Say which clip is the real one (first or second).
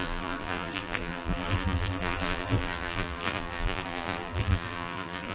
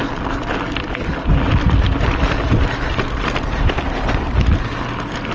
second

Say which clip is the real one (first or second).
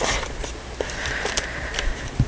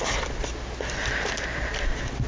second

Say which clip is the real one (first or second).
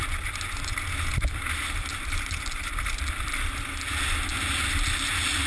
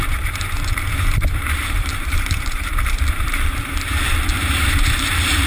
first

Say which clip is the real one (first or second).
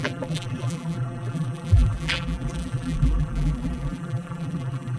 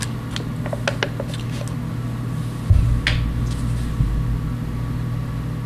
second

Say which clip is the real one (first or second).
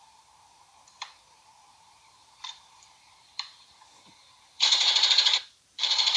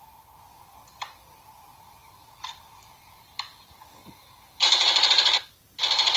second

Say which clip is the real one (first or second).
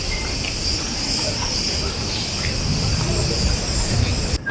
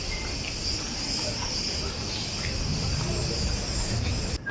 second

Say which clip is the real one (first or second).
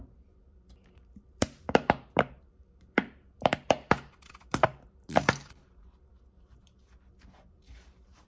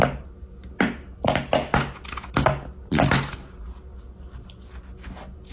second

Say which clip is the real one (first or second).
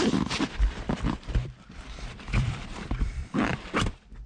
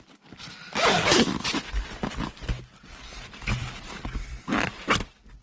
second